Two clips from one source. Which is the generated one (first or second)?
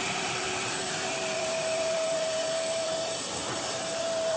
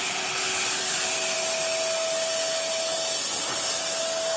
first